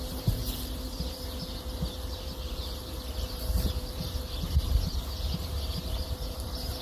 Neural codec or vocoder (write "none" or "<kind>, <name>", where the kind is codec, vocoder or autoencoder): vocoder, BigVGAN v2